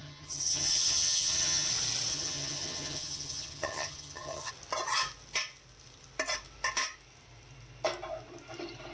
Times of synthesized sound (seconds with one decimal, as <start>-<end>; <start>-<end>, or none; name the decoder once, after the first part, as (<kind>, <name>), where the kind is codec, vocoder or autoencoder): 0.0-1.7 (vocoder, HiFi-GAN); 2.1-4.5